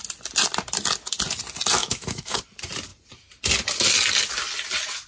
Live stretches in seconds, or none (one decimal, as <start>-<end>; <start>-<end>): 0.0-1.8; 2.4-5.1